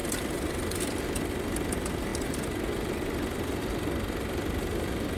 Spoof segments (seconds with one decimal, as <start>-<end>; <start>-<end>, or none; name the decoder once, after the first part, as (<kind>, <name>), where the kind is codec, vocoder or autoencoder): none